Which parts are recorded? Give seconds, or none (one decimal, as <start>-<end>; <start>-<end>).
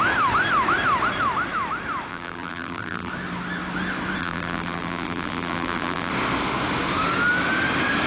0.0-2.1; 3.1-4.2; 6.1-8.1